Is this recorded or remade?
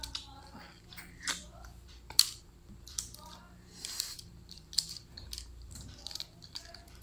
remade